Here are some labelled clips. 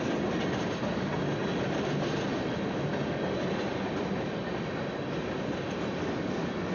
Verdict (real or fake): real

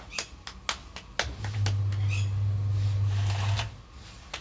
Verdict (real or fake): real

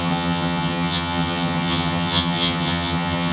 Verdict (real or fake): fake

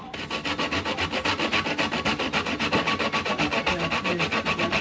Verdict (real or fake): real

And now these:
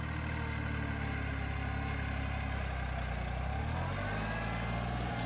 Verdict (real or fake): real